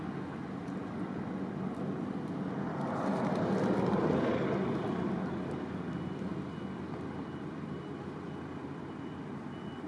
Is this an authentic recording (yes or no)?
yes